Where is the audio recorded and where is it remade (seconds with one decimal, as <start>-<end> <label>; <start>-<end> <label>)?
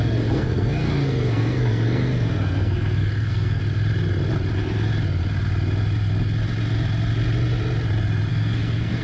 0.0-3.6 remade; 3.6-8.3 recorded; 8.3-9.0 remade